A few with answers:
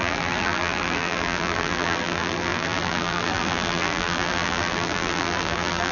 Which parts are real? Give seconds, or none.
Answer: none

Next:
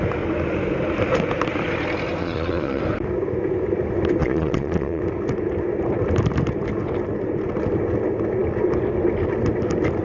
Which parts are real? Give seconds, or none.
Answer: 0.0-2.2; 2.8-4.2; 5.0-10.0

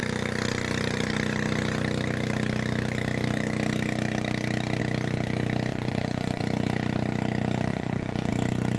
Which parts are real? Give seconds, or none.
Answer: 0.0-5.7; 6.4-7.7; 8.3-8.8

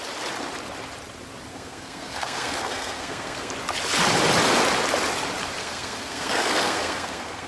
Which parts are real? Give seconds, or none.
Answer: 0.0-1.5; 3.5-5.6

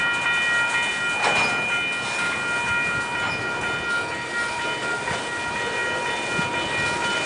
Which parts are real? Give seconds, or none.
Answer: 0.0-7.3

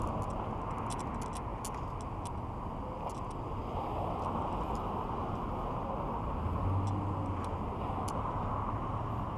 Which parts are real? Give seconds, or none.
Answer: 0.0-9.4